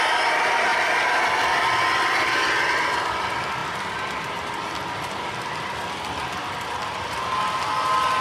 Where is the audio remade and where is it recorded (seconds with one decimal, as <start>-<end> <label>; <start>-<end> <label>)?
0.0-8.2 recorded